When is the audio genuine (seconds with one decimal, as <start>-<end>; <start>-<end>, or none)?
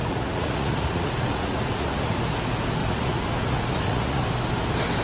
2.2-2.8; 4.2-5.0